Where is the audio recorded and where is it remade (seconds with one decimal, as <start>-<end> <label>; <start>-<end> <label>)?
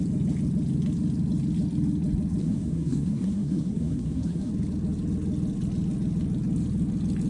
0.0-2.4 recorded; 2.4-4.5 remade; 4.5-7.3 recorded